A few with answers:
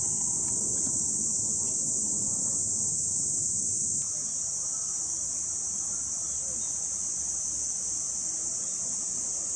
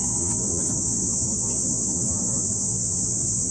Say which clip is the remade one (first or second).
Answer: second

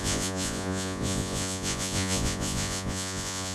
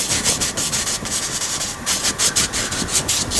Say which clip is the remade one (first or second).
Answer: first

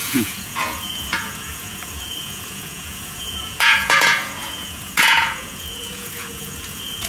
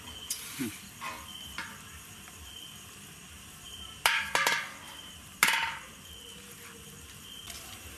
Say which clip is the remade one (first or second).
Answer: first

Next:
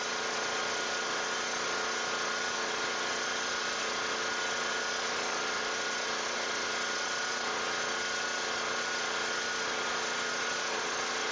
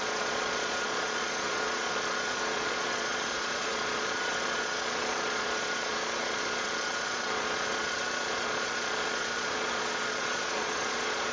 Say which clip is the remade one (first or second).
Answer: second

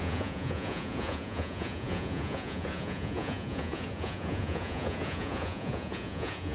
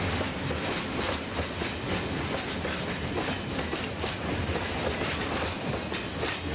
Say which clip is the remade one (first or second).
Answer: first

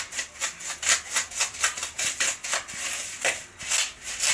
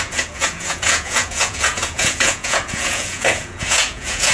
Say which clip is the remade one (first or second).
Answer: second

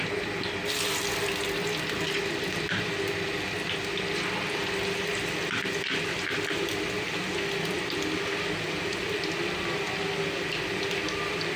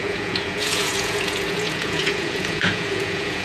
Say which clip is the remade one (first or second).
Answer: second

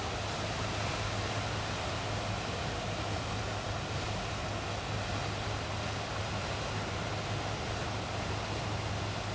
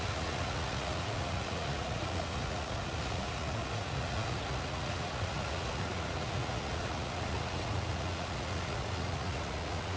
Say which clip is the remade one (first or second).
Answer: second